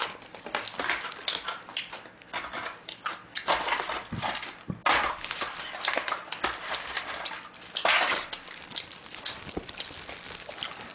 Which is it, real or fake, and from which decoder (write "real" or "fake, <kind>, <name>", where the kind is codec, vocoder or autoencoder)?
real